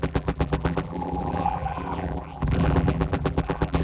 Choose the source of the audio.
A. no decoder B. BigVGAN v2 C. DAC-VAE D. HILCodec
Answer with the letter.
B